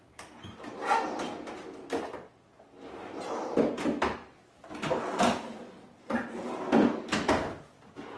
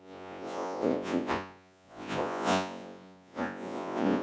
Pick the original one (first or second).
first